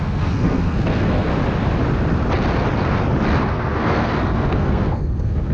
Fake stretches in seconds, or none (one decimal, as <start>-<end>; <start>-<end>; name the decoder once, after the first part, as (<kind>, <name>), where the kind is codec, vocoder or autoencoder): 0.0-1.3 (codec, SNAC); 3.5-5.5